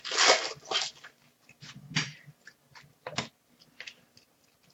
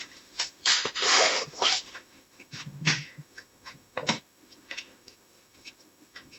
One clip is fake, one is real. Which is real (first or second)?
first